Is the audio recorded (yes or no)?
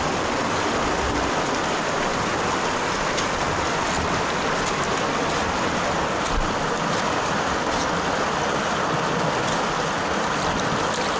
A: yes